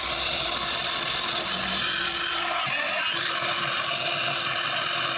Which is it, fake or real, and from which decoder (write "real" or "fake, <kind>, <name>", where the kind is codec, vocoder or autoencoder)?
real